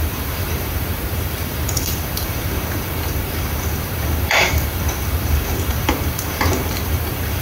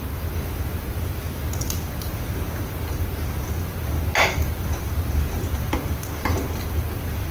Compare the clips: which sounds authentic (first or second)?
second